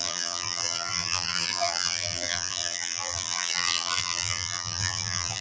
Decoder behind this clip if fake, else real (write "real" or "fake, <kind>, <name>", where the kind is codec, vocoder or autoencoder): fake, vocoder, BigVGAN v2